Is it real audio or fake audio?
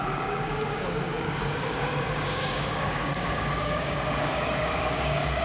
fake